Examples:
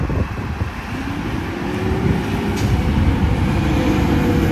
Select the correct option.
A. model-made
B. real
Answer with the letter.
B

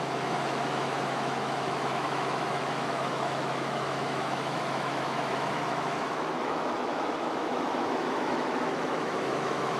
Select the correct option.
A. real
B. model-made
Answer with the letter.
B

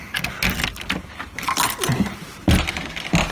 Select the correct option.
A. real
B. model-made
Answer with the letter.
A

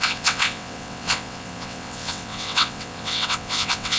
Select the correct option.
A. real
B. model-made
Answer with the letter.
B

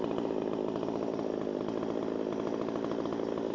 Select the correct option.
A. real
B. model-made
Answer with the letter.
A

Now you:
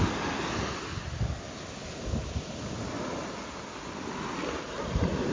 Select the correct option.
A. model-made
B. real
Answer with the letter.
B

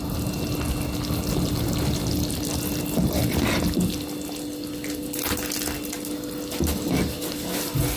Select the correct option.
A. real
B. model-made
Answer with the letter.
A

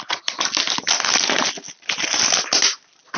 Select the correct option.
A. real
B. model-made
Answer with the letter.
A